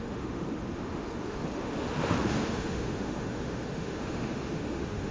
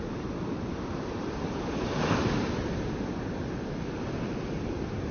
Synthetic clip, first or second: first